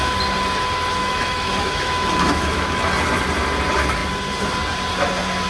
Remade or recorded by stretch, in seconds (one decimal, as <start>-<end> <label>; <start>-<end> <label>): 0.0-1.0 recorded; 1.0-2.9 remade; 2.9-5.5 recorded